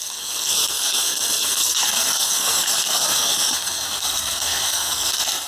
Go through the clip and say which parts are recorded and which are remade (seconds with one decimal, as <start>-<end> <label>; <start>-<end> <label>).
0.0-5.5 remade